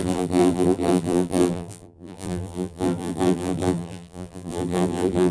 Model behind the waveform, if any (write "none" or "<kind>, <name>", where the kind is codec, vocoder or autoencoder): vocoder, BigVGAN v2